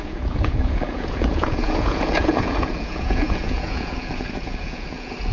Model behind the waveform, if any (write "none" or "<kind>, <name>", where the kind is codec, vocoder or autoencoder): vocoder, Vocos